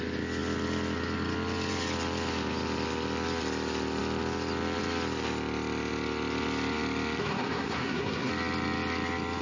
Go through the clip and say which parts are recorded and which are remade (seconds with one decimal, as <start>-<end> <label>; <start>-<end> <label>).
0.0-7.2 recorded; 7.2-8.3 remade; 8.3-9.4 recorded